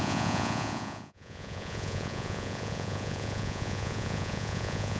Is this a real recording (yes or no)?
no